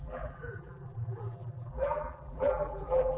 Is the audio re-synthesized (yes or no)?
yes